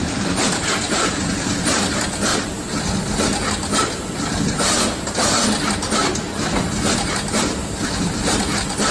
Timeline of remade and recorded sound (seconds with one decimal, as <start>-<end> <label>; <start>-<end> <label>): 0.0-2.3 remade; 2.3-7.3 recorded; 7.3-8.9 remade